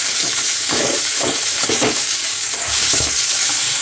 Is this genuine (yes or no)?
no